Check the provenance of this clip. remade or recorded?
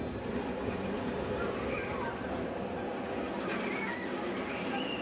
recorded